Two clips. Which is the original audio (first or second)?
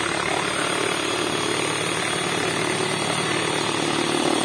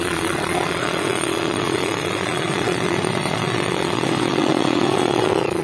first